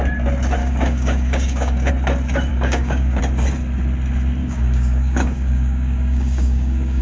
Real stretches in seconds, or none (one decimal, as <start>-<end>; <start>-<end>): 0.0-0.6; 1.9-2.5; 3.2-4.4